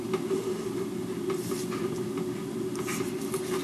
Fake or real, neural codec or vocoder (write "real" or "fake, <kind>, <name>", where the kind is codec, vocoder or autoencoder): real